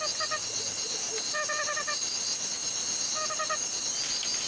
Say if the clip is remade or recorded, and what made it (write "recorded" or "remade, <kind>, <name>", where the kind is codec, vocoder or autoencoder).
recorded